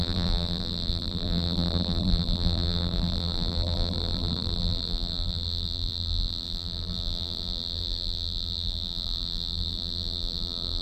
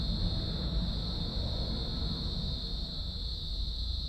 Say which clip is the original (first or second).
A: second